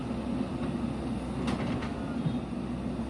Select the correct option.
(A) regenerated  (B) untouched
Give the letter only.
B